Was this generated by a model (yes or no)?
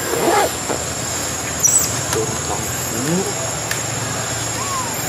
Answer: no